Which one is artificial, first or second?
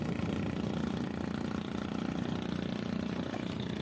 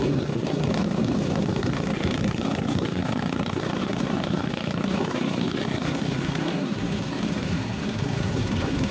second